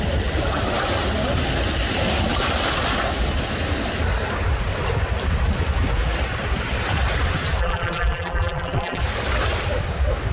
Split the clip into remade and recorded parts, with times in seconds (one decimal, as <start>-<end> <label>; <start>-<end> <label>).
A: 0.0-7.6 recorded; 7.6-9.0 remade; 9.0-10.3 recorded